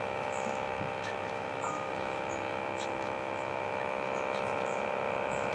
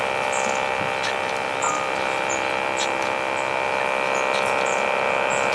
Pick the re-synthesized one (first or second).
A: first